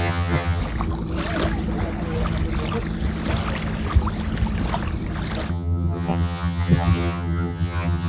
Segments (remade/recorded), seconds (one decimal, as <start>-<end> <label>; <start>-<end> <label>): 0.0-0.6 remade; 0.6-5.5 recorded; 5.5-8.1 remade